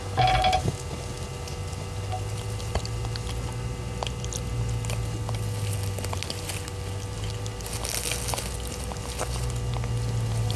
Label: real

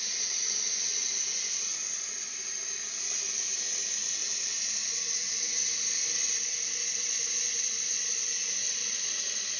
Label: real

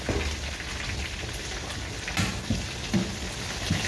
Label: real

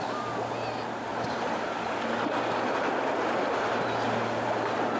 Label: real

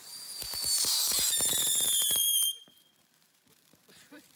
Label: fake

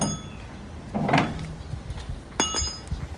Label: real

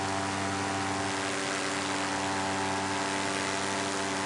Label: real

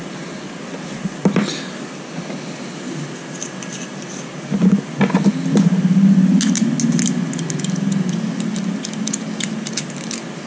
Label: real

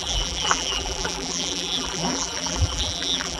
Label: fake